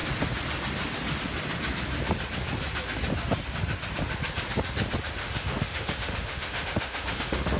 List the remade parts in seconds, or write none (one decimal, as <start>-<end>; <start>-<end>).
5.2-7.6